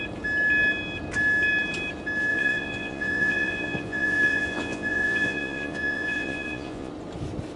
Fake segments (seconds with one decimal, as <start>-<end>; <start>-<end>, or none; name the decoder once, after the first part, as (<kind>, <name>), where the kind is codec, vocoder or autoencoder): 2.3-6.9 (vocoder, Vocos)